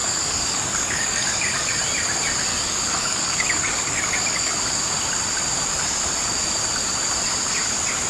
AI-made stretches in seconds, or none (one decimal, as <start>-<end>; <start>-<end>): 0.0-1.7; 2.5-4.5